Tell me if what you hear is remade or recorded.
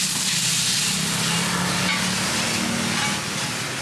recorded